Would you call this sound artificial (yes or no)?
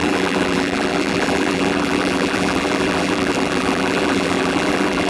yes